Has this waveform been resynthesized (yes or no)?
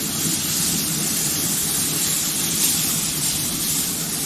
no